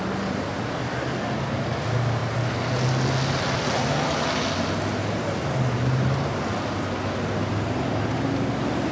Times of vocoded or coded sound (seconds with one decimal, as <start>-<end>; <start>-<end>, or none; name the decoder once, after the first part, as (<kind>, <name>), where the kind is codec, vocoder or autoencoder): none